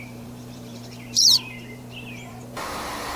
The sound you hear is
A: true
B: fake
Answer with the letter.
B